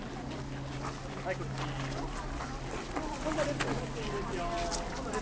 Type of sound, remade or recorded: recorded